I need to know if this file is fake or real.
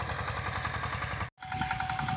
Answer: real